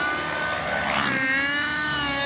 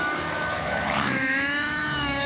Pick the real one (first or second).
first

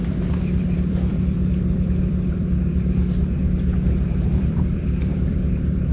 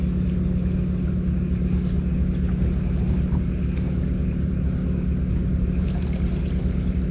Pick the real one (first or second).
second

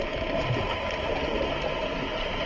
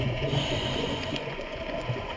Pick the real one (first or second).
first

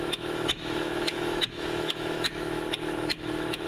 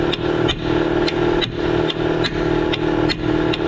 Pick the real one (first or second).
second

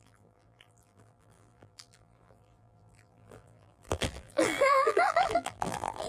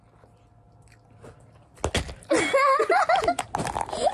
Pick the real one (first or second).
second